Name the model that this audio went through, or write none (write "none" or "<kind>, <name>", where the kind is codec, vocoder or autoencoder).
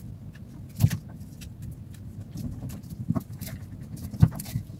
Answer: none